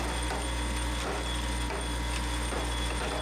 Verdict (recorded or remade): recorded